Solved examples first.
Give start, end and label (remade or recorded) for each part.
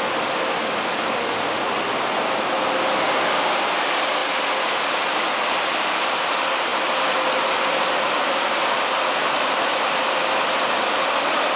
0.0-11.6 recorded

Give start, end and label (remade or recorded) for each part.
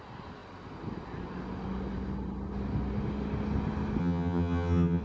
0.0-4.0 recorded; 4.0-5.0 remade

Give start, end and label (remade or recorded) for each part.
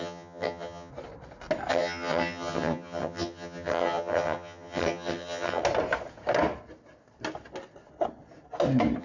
0.0-0.9 remade; 0.9-1.7 recorded; 1.7-5.6 remade; 5.6-9.0 recorded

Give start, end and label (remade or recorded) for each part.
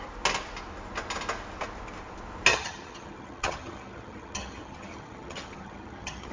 0.0-2.5 recorded; 2.5-6.3 remade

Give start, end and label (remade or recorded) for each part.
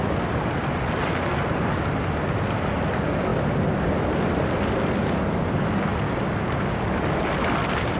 0.0-8.0 recorded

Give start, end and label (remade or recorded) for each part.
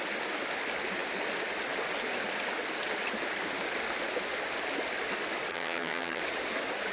0.0-5.5 recorded; 5.5-6.2 remade; 6.2-6.9 recorded